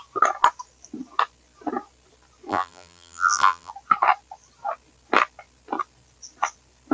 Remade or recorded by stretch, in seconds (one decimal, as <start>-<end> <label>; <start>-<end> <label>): 0.0-2.5 recorded; 2.5-3.7 remade; 3.7-6.9 recorded

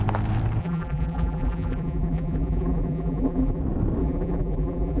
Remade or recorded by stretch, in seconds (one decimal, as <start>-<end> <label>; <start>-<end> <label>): 0.0-0.6 recorded; 0.6-3.6 remade; 3.6-4.0 recorded; 4.0-5.0 remade

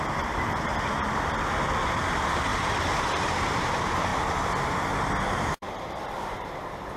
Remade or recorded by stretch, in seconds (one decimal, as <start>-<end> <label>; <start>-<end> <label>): 0.0-0.7 remade; 0.7-1.8 recorded; 1.8-4.1 remade; 4.1-5.4 recorded; 5.4-7.0 remade